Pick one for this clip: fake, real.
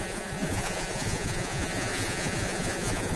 fake